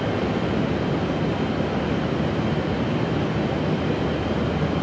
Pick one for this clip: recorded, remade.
recorded